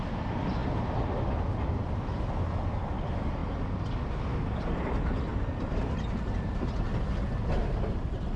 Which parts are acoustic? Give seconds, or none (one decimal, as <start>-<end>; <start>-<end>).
0.0-8.4